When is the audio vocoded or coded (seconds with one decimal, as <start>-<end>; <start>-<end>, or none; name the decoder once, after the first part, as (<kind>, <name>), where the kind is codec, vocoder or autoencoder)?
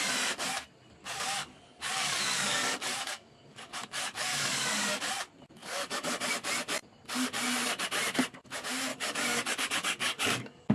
1.0-5.0 (codec, DAC); 5.6-6.2; 8.9-10.7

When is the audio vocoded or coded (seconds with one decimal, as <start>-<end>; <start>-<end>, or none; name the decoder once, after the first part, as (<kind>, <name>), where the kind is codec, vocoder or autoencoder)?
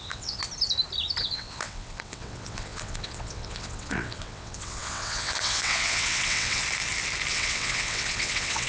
0.0-0.4 (vocoder, WaveNeXt); 1.2-6.6; 7.3-8.7